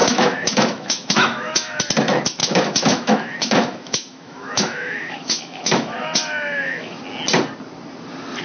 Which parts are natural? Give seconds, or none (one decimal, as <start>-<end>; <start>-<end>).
1.8-2.4; 7.0-8.4

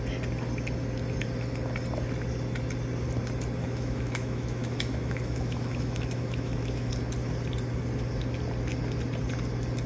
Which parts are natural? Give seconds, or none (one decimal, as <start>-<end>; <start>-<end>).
0.0-3.6; 6.9-9.9

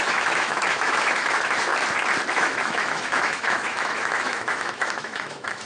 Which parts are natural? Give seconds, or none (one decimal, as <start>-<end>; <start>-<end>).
1.7-2.3

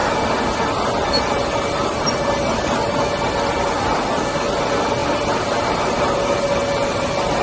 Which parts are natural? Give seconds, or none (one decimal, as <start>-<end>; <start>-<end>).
0.0-7.4

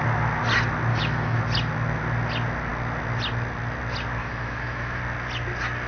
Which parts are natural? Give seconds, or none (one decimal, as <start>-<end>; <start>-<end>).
0.0-0.9; 1.4-4.2; 5.0-5.9

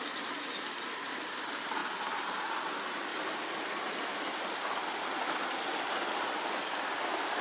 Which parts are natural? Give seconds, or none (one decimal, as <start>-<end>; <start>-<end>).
0.0-7.4

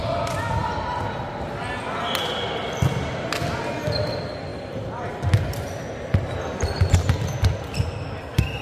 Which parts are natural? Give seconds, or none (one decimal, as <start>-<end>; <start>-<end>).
0.0-8.6